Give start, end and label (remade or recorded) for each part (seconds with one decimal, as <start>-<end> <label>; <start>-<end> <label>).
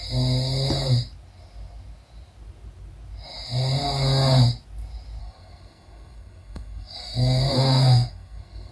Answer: 0.0-5.2 recorded; 5.2-8.7 remade